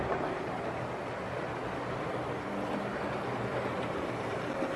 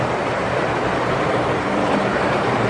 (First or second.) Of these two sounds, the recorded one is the first